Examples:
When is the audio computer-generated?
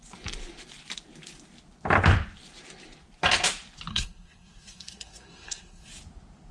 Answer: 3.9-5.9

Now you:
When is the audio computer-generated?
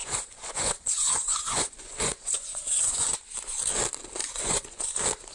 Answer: 0.0-3.2; 4.2-4.8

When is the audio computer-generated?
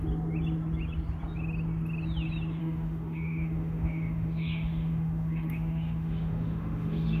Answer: 2.6-7.2